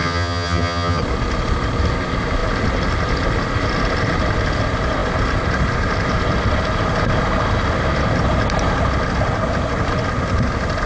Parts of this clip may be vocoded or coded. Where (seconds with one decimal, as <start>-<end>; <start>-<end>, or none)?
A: 0.0-1.0